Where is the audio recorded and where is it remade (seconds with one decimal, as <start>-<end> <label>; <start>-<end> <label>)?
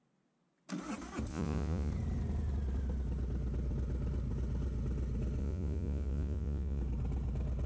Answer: 0.0-1.3 recorded; 1.3-1.9 remade; 1.9-5.4 recorded; 5.4-6.8 remade; 6.8-7.7 recorded